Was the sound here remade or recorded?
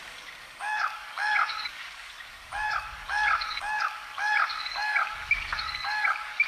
remade